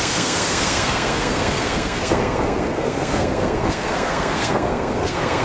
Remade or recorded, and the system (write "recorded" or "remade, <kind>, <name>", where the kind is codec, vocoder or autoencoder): remade, codec, SNAC